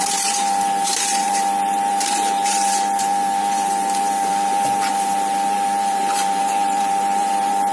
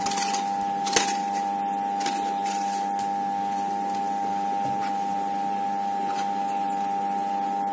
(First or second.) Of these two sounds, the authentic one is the second